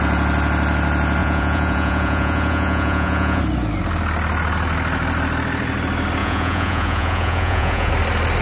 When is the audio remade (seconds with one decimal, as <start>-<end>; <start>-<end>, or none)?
1.2-3.4; 6.2-7.9

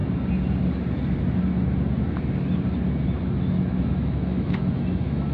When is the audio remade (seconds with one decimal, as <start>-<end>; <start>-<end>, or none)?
3.2-5.3

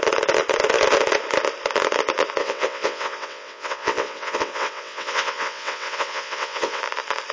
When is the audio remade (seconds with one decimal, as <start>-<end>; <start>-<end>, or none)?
2.4-6.8

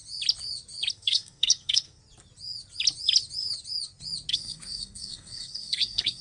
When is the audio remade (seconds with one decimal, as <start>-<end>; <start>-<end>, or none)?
0.9-2.0; 4.3-6.2

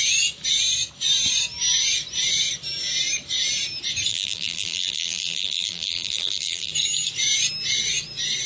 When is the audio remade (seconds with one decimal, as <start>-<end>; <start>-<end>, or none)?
4.1-6.7